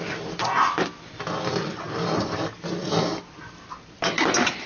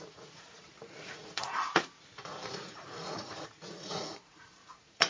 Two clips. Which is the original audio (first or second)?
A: first